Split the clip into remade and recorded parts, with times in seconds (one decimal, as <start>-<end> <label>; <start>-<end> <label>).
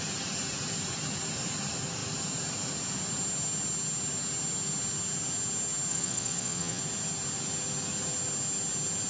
0.0-5.9 recorded; 5.9-6.8 remade; 6.8-9.1 recorded